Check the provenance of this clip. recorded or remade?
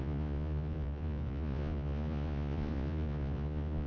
remade